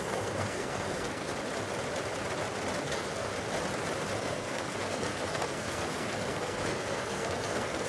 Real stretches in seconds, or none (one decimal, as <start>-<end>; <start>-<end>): 1.3-2.8; 3.3-4.2